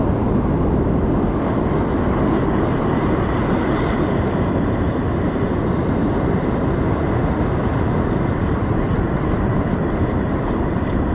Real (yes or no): yes